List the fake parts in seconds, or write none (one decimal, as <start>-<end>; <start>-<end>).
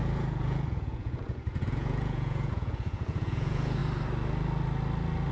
0.0-3.8